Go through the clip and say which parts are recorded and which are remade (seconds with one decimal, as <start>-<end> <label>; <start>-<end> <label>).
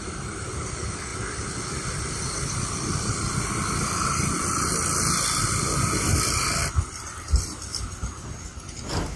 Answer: 0.0-9.2 remade